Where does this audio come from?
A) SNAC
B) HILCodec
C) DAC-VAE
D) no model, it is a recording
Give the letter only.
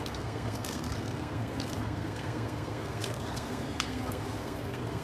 A